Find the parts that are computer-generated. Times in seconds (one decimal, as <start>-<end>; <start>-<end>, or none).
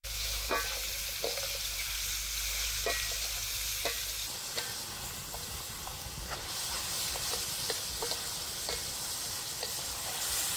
0.0-0.5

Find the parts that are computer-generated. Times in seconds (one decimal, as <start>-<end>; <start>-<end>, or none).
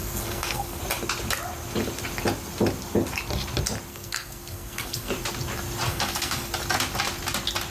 0.0-0.8; 3.9-5.1; 5.9-6.5